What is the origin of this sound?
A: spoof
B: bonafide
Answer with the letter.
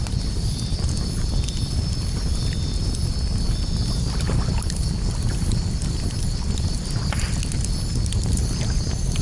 B